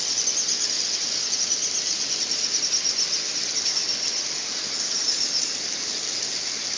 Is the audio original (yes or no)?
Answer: yes